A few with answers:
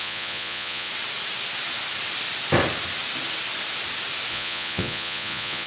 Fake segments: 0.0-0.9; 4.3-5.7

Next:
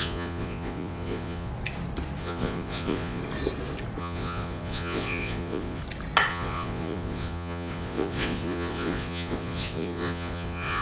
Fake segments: 0.0-1.5; 2.2-3.2; 4.0-5.8; 6.3-10.8

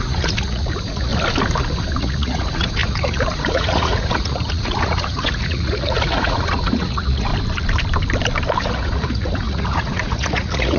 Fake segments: 0.0-1.1; 2.0-7.3; 8.6-10.8

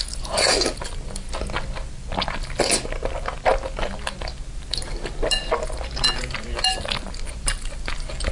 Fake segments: none